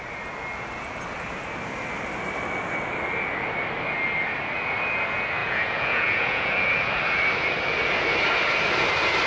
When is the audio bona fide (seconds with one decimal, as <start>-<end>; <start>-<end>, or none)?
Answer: 0.0-5.4; 6.5-9.3